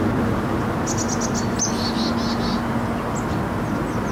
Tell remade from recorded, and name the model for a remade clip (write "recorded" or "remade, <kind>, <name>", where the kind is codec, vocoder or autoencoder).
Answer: recorded